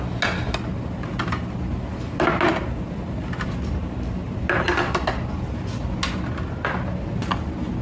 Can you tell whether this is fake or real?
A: real